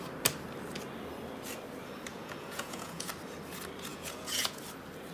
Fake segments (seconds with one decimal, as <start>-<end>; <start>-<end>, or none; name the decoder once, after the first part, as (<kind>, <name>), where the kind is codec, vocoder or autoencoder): 2.1-3.1 (vocoder, Vocos); 3.9-4.6